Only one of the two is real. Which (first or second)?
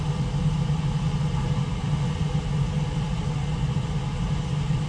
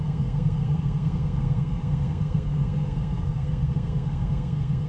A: first